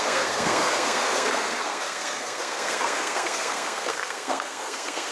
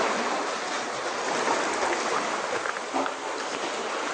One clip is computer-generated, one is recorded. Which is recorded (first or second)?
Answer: second